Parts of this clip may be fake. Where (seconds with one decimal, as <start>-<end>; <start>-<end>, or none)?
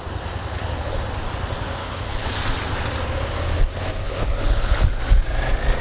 0.5-1.0; 1.8-2.3; 4.0-5.0